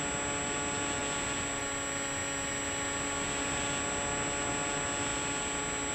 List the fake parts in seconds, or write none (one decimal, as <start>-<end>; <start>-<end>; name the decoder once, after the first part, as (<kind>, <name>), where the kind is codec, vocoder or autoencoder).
none